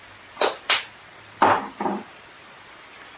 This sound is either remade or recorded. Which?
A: recorded